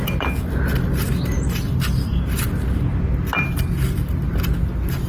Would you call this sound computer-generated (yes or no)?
no